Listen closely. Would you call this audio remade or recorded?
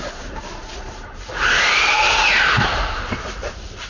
recorded